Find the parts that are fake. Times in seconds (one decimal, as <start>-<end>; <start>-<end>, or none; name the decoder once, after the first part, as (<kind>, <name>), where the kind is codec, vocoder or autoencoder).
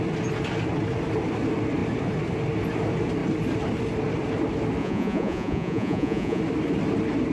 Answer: 4.8-6.4 (vocoder, Vocos)